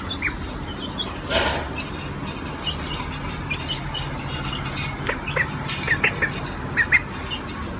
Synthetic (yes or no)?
no